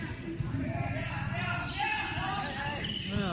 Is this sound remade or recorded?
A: recorded